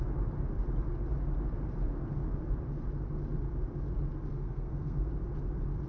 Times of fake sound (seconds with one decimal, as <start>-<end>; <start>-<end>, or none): 4.3-5.1